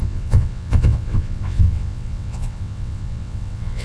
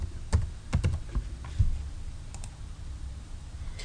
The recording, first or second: second